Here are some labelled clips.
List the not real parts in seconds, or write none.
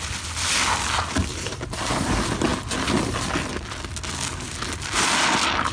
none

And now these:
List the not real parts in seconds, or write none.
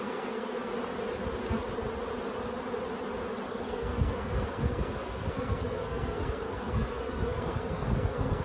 0.0-0.7 (codec, SNAC); 3.5-8.4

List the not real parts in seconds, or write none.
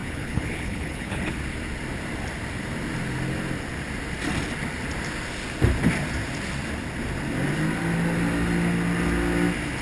0.0-1.4 (codec, HILCodec)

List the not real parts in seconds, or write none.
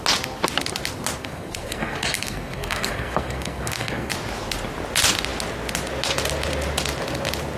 1.2-4.1 (codec, SNAC)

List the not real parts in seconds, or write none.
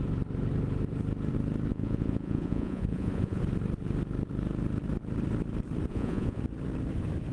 1.7-3.4 (vocoder, Vocos); 5.9-6.4